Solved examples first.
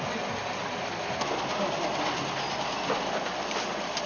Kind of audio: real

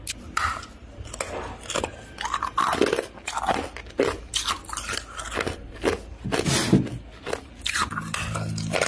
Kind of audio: real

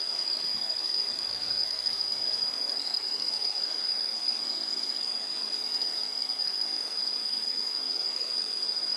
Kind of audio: fake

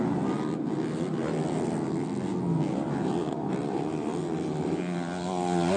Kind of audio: real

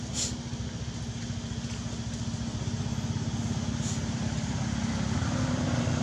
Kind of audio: real